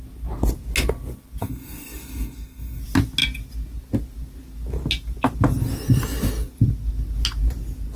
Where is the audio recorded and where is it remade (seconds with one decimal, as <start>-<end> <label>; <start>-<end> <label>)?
0.0-1.4 recorded; 1.4-2.8 remade; 2.8-8.0 recorded